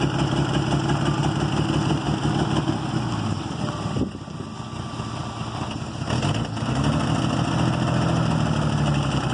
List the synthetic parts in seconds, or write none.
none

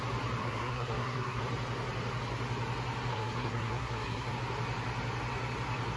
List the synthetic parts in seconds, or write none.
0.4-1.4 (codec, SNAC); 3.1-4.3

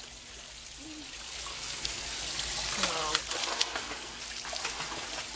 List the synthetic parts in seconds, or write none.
1.5-2.2 (codec, SNAC); 3.4-4.2

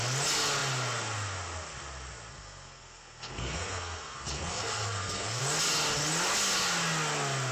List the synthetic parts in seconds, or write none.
2.3-5.4 (codec, SNAC)

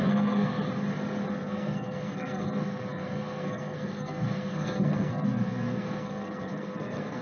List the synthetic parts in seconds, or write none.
0.0-0.6 (codec, SNAC); 1.3-7.2